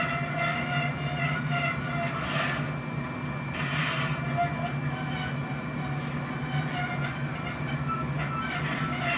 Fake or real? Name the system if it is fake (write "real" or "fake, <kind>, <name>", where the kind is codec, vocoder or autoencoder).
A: real